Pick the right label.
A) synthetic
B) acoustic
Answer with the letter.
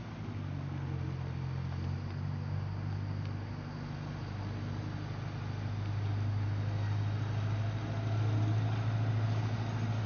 B